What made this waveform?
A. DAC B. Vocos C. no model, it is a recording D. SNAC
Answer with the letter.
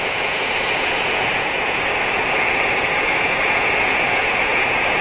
B